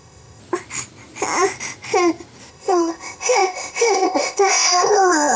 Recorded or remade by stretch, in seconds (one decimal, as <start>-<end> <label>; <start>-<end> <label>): 0.0-0.4 remade; 0.4-2.5 recorded; 2.5-5.4 remade